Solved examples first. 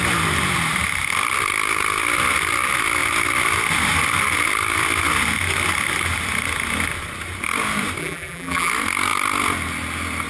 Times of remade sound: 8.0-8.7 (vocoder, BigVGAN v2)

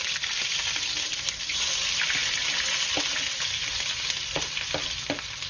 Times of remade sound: none

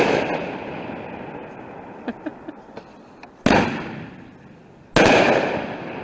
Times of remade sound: none

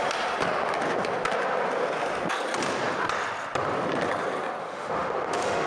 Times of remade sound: 4.6-5.7 (autoencoder, DAC-VAE)

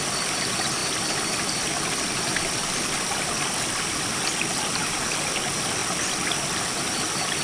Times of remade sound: none

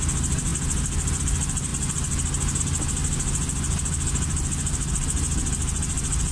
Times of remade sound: none